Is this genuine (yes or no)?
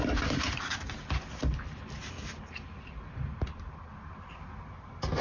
yes